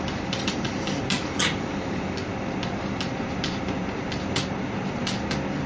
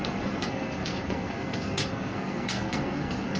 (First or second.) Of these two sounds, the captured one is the first